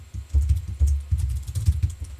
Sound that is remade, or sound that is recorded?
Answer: recorded